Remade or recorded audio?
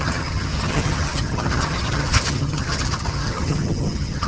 remade